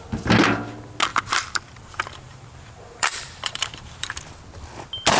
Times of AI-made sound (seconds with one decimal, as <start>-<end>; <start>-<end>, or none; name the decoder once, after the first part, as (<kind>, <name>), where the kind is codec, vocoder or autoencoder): 1.1-4.2 (vocoder, BigVGAN v2)